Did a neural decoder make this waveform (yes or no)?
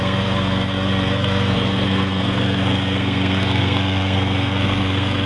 yes